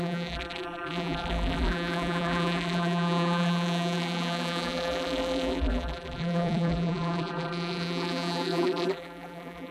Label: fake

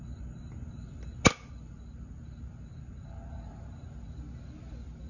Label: real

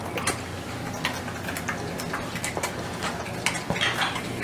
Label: real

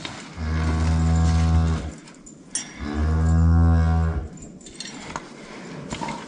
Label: real